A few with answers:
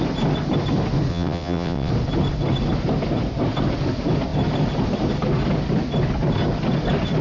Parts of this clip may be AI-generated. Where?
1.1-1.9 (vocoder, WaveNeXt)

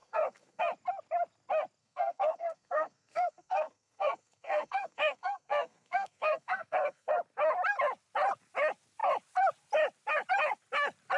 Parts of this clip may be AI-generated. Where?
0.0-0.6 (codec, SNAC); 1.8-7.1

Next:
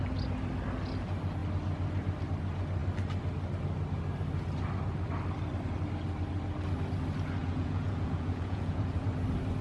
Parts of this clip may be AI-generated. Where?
7.4-9.1 (vocoder, Vocos)